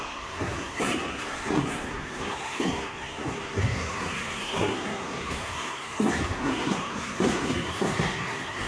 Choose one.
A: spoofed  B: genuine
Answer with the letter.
A